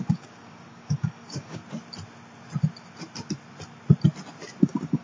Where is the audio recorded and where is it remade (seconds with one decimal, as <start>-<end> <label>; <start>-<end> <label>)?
0.0-1.6 remade; 1.6-4.6 recorded; 4.6-5.0 remade

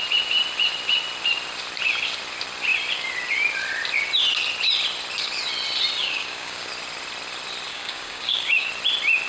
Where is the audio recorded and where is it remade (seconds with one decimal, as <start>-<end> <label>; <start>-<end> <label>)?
0.0-6.0 recorded; 6.0-6.7 remade; 6.7-7.7 recorded; 7.7-8.7 remade; 8.7-9.3 recorded

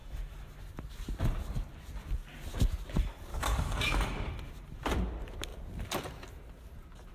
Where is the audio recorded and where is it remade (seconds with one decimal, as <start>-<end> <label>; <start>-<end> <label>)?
0.0-0.6 remade; 0.6-3.3 recorded; 3.3-4.3 remade; 4.3-7.1 recorded